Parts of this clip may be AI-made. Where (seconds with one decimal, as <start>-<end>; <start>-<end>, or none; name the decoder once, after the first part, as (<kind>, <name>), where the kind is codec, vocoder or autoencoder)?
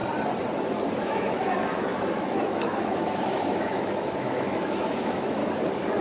1.0-5.4 (autoencoder, DAC-VAE)